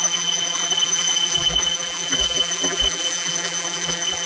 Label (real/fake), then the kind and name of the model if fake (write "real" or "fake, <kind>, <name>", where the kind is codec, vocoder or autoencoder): fake, vocoder, BigVGAN v2